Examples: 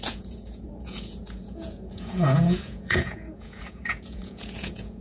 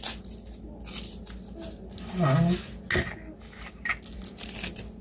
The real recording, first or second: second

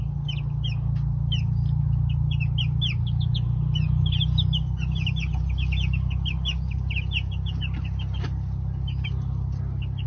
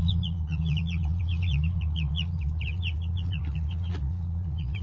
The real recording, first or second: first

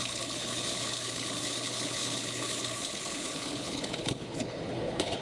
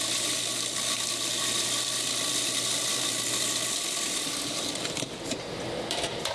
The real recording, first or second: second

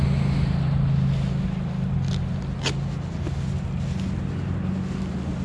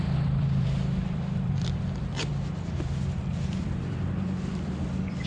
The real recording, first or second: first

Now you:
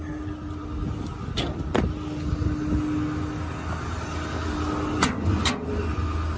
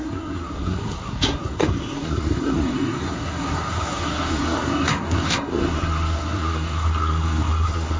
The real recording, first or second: first